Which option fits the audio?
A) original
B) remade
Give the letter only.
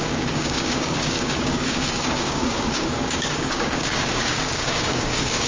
B